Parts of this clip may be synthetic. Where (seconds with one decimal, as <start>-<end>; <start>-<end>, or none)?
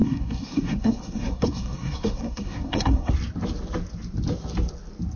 0.0-3.1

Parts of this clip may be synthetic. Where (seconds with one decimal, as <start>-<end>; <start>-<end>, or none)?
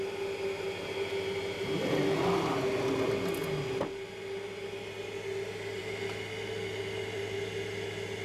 none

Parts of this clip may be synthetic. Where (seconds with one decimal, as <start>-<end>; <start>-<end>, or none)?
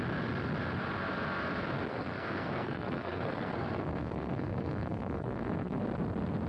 1.9-5.8